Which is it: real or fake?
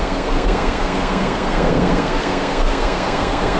fake